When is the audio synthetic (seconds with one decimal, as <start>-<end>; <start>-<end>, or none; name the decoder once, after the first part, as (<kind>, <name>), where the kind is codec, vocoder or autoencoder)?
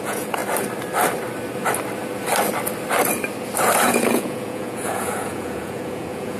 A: 0.0-0.4 (vocoder, Vocos); 3.8-6.4